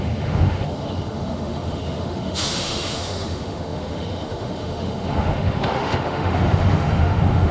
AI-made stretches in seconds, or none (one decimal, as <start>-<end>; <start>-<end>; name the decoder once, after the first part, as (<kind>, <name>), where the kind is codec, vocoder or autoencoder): 0.0-7.5 (autoencoder, DAC-VAE)